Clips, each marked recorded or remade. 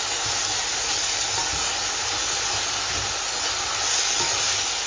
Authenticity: recorded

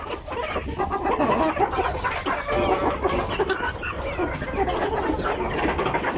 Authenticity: recorded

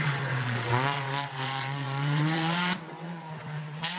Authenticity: remade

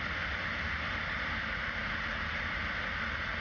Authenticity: recorded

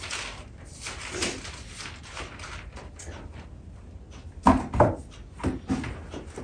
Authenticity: recorded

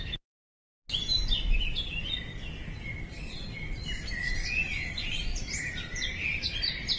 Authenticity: recorded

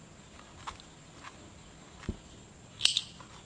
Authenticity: recorded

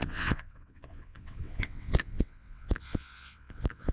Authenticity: remade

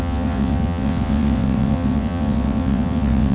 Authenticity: remade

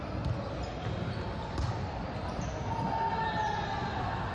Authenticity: recorded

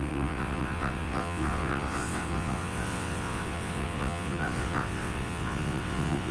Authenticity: remade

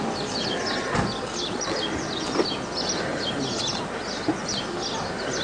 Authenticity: recorded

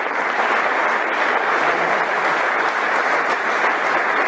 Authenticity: recorded